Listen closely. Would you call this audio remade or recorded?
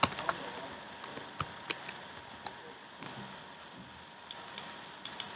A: recorded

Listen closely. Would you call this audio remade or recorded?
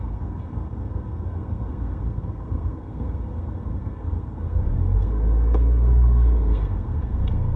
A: remade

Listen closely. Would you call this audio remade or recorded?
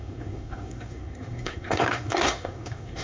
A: remade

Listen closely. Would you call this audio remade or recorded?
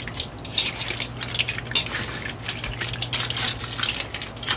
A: recorded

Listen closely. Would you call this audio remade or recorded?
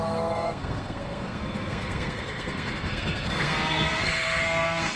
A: remade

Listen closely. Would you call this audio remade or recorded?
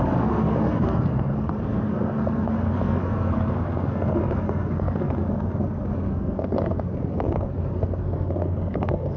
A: remade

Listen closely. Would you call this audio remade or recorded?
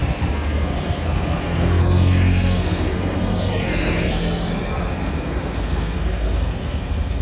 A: remade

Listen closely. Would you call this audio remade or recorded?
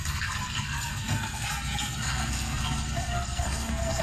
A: remade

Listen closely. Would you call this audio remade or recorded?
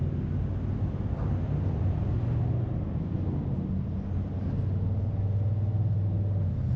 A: recorded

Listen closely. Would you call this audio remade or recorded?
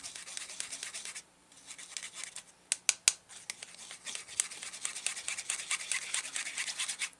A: recorded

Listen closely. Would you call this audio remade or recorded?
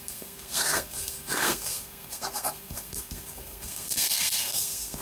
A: remade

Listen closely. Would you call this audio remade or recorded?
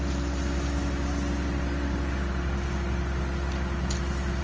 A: recorded